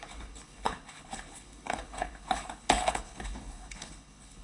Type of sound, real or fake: fake